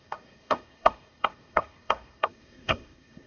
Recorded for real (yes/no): no